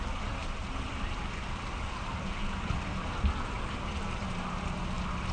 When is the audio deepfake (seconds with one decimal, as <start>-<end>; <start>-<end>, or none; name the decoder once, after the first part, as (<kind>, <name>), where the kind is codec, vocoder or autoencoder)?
0.4-3.6 (vocoder, BigVGAN v2)